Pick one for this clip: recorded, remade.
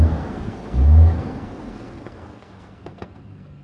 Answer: remade